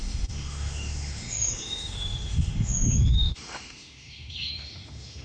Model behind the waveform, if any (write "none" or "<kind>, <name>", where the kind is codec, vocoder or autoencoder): autoencoder, DAC-VAE